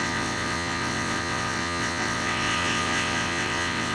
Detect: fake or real fake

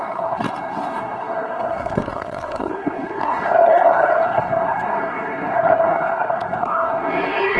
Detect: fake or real fake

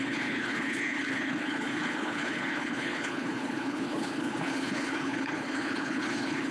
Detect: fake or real fake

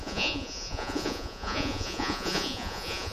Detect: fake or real fake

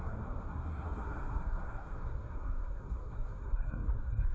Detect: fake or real fake